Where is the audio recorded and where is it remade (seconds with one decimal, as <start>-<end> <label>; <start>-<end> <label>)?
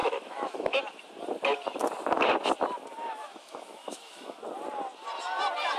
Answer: 0.0-0.8 remade; 0.8-3.0 recorded; 3.0-4.4 remade; 4.4-5.8 recorded